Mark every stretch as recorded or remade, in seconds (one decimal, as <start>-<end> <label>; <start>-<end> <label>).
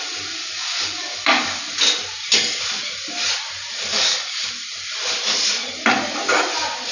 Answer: 0.0-0.4 recorded; 0.4-1.6 remade; 1.6-3.9 recorded; 3.9-4.5 remade; 4.5-6.9 recorded